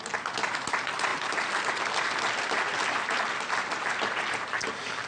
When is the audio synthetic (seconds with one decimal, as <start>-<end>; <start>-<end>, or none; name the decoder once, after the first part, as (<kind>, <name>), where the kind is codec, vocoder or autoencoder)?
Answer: none